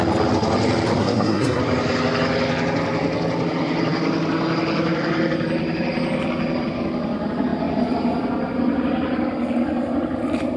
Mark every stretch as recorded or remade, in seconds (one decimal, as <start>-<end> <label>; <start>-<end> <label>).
0.0-1.0 recorded; 1.0-1.6 remade; 1.6-10.6 recorded